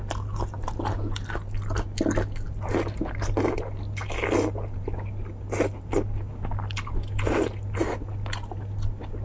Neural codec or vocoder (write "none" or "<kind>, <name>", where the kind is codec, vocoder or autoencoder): none